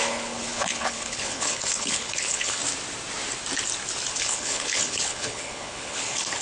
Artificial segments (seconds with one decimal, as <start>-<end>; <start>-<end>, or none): 0.0-2.6; 4.2-6.4